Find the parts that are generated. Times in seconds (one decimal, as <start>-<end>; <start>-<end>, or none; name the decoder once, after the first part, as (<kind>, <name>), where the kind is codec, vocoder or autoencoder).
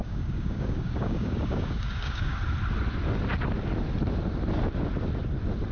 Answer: 0.0-2.4 (codec, DAC)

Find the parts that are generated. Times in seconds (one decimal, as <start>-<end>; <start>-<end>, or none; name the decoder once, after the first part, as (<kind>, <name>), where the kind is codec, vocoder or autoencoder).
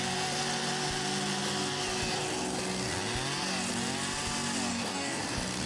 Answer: 4.7-5.2 (codec, DAC)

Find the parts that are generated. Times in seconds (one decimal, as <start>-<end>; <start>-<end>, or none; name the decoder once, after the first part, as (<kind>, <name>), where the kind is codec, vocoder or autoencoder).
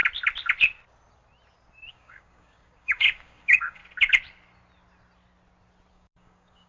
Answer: 1.9-3.8 (codec, DAC); 5.9-6.7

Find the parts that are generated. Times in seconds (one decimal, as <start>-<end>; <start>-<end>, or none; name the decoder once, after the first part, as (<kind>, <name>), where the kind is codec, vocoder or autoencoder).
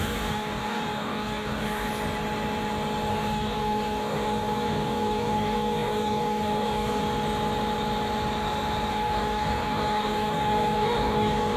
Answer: 0.0-1.9 (codec, DAC); 3.1-7.0; 8.9-11.6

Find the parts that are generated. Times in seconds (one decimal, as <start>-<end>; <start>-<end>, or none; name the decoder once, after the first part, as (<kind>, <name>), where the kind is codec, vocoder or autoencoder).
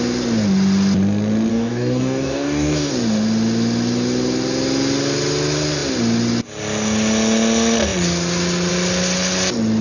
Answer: 1.5-2.9 (codec, DAC)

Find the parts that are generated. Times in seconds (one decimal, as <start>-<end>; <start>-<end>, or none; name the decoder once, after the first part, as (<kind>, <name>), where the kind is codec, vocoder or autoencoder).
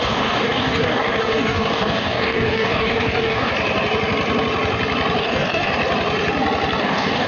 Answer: 0.0-3.5 (codec, DAC); 5.2-5.7; 6.8-7.3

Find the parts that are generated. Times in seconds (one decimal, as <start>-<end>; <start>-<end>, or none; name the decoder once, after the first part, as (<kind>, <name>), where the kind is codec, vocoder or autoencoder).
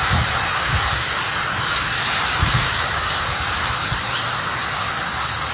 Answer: 2.6-3.3 (codec, DAC)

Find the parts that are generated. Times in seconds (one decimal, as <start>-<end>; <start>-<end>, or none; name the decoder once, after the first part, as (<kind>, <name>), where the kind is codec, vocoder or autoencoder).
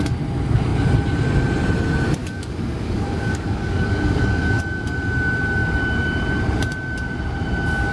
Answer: 2.2-4.6 (codec, DAC)